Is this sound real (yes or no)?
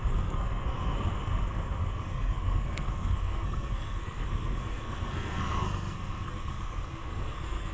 no